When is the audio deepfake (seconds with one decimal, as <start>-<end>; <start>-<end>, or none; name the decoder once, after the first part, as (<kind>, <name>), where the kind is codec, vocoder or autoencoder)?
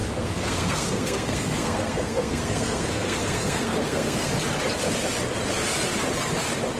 0.0-4.3 (codec, SNAC)